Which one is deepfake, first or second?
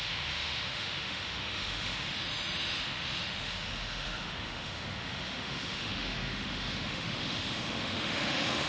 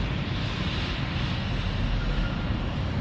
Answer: first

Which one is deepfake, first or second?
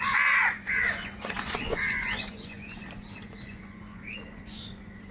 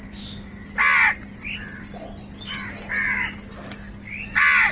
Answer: first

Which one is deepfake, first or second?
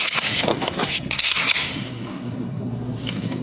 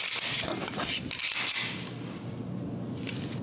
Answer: first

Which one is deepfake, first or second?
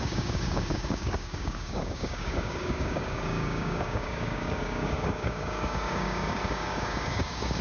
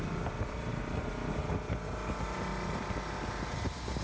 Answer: first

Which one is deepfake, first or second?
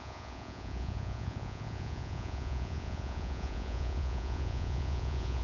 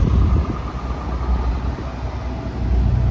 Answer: first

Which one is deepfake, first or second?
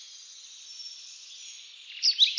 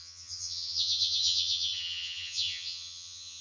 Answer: second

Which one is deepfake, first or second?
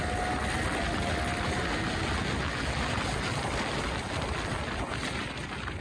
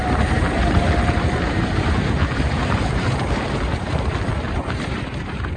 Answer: second